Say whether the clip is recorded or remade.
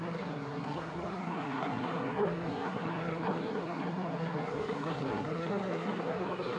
remade